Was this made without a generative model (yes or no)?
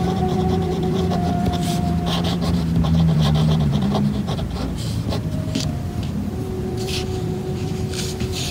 no